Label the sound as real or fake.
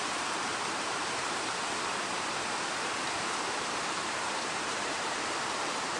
fake